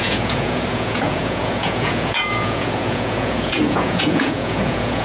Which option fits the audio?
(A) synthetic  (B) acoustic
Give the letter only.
A